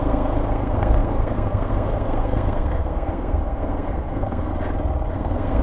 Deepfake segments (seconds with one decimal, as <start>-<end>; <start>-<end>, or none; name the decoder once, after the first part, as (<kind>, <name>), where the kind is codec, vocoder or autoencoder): 0.0-4.5 (codec, SNAC); 5.1-5.6